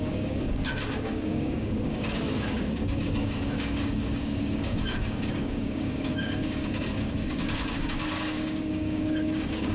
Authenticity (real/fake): fake